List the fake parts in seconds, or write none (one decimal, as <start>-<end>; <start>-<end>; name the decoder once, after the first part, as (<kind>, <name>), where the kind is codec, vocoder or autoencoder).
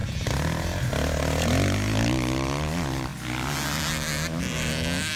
none